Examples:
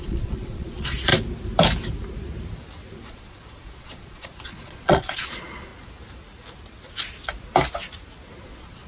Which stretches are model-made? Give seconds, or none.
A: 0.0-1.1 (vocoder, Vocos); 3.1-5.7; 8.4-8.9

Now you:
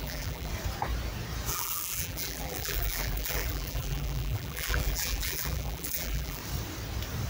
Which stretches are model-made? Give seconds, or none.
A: 0.0-0.5 (vocoder, BigVGAN v2); 1.5-6.4

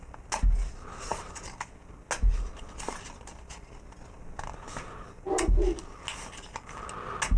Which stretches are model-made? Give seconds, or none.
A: none